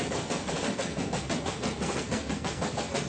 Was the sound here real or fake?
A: fake